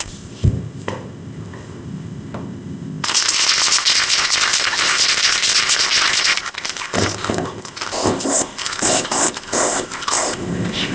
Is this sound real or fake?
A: fake